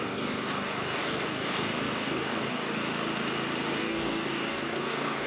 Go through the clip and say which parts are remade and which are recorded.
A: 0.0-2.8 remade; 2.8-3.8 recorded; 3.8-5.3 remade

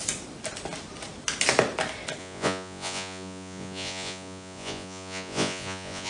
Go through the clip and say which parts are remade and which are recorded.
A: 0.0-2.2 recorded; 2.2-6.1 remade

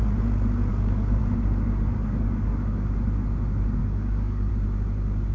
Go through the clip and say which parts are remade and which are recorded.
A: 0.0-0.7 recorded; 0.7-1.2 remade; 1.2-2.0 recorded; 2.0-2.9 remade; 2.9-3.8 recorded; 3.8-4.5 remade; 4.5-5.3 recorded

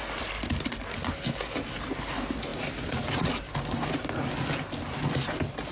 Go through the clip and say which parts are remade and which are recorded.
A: 0.0-1.1 remade; 1.1-2.5 recorded; 2.5-4.1 remade; 4.1-5.7 recorded

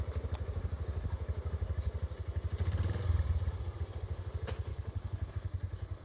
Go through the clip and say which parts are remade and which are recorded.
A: 0.0-4.7 recorded; 4.7-5.3 remade; 5.3-6.0 recorded

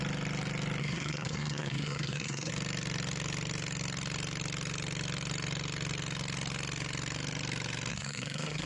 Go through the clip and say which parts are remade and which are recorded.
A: 0.0-0.8 recorded; 0.8-2.5 remade; 2.5-7.9 recorded; 7.9-8.7 remade

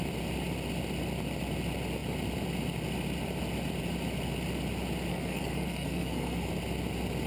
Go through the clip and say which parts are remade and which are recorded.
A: 0.0-5.1 recorded; 5.1-6.5 remade; 6.5-7.3 recorded